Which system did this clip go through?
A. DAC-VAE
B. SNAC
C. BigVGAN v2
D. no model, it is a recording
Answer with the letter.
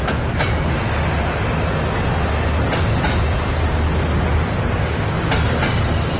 D